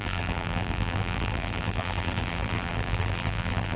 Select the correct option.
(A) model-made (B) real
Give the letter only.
A